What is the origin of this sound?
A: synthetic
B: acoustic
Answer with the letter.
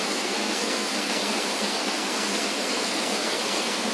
A